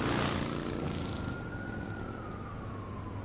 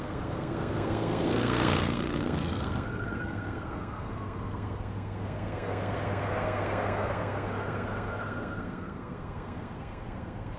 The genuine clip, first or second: first